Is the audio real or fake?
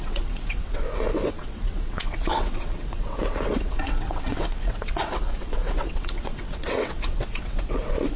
fake